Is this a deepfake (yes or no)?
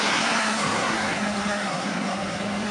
yes